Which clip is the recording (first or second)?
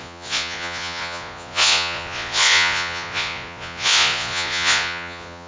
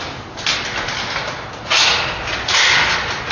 second